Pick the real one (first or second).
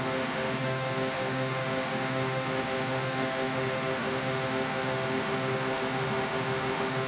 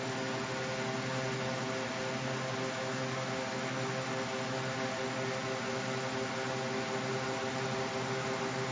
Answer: second